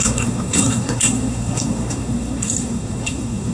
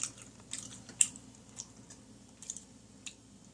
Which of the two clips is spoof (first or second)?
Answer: first